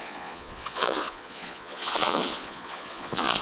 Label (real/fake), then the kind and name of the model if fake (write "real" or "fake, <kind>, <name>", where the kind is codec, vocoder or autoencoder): fake, vocoder, Vocos